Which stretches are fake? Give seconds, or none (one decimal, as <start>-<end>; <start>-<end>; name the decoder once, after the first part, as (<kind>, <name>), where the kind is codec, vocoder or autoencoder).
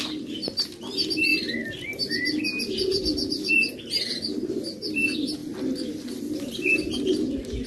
none